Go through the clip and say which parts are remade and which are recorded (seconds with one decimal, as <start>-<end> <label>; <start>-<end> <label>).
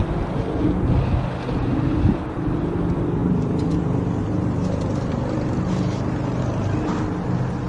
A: 0.0-1.6 recorded; 1.6-2.4 remade; 2.4-3.2 recorded; 3.2-6.4 remade; 6.4-7.7 recorded